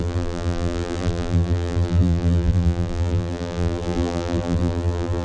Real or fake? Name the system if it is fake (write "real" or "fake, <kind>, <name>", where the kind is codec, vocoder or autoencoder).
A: fake, vocoder, BigVGAN v2